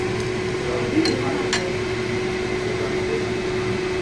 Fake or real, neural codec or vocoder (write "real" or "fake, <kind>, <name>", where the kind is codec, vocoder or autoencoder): real